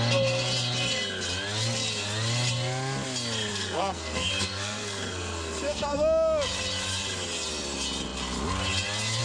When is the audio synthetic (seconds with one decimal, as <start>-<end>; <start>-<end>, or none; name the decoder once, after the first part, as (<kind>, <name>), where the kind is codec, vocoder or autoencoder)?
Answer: 3.5-6.0 (codec, SNAC)